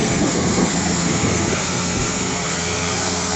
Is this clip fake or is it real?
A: fake